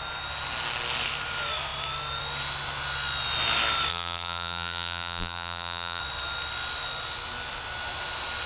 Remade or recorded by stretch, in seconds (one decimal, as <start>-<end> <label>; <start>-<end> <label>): 0.0-3.9 recorded; 3.9-6.0 remade; 6.0-8.5 recorded